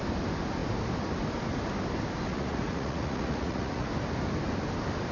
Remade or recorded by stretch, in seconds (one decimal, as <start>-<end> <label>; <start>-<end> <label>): 0.0-2.3 recorded; 2.3-3.9 remade; 3.9-5.1 recorded